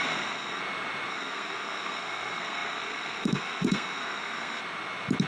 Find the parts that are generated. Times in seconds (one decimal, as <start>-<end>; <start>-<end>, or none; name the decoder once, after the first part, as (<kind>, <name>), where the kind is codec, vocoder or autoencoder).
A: 0.0-0.6 (codec, SNAC); 1.1-4.6